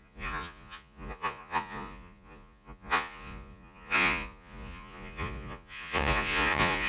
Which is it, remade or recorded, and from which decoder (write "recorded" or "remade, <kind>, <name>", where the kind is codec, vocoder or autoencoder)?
remade, vocoder, Vocos